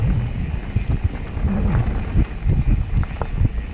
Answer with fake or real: real